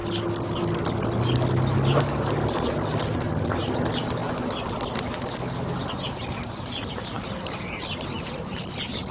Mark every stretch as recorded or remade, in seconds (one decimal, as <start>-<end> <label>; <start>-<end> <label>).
0.0-9.1 recorded